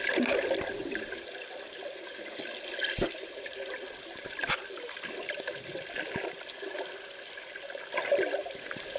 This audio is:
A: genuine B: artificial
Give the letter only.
A